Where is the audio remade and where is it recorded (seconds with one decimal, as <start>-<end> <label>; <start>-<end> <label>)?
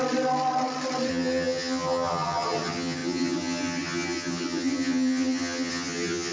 0.0-1.1 recorded; 1.1-6.3 remade